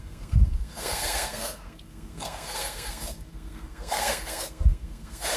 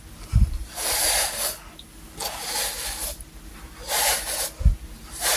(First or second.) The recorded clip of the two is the second